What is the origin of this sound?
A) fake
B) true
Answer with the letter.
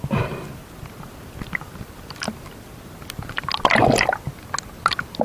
B